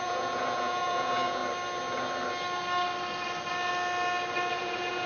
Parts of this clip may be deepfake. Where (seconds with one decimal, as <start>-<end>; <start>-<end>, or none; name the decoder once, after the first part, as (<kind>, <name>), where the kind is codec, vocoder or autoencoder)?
0.0-1.4 (vocoder, Vocos); 4.5-5.1